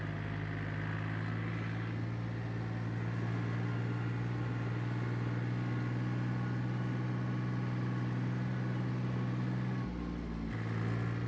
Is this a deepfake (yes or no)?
no